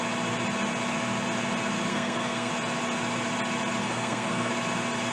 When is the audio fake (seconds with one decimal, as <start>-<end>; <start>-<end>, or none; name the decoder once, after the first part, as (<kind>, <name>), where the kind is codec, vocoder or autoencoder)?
1.9-2.5 (codec, SNAC); 3.8-4.5